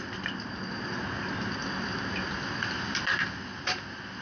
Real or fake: real